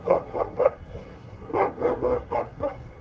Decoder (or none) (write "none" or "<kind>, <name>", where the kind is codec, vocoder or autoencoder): codec, SNAC